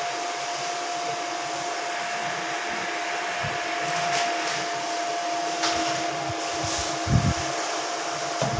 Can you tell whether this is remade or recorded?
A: recorded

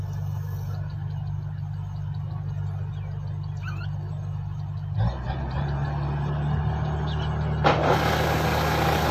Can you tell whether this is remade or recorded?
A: recorded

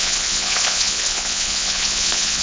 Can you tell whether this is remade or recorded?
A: remade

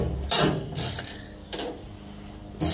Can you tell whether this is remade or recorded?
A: recorded